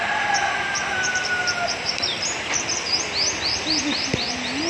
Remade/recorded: recorded